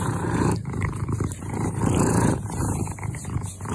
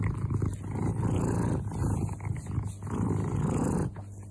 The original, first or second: second